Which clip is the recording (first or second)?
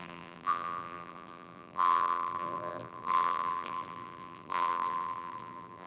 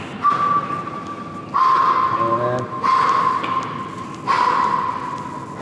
second